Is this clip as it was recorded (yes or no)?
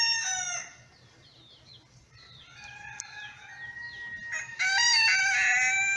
yes